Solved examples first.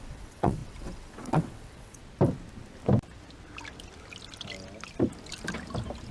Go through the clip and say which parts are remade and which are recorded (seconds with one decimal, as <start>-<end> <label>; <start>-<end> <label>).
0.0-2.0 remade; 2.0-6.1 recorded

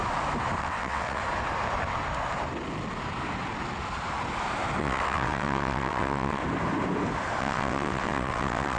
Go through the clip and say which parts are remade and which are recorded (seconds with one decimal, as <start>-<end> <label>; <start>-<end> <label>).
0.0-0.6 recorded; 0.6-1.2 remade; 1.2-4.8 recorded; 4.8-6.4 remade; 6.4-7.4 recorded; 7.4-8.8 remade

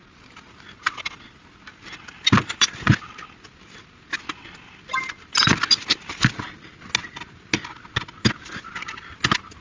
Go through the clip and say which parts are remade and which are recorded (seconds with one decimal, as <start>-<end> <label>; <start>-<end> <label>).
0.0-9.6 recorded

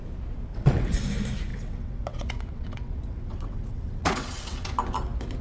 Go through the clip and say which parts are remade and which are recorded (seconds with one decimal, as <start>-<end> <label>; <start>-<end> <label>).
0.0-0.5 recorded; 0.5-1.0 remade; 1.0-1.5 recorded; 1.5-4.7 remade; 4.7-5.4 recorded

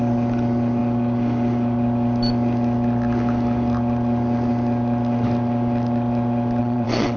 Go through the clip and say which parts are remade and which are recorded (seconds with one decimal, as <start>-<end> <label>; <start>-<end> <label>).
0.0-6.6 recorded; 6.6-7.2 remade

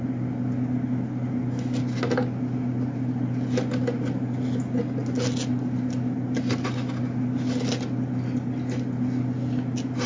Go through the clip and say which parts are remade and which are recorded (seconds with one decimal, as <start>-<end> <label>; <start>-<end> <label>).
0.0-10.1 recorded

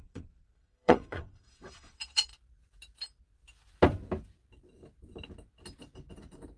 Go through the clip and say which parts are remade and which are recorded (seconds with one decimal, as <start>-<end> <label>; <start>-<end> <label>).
0.0-2.3 remade; 2.3-6.6 recorded